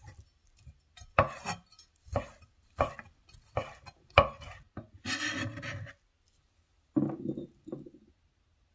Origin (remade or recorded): recorded